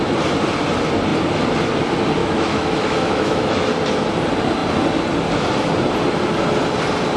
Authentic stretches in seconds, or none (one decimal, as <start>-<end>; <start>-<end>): 0.0-2.2; 3.7-7.2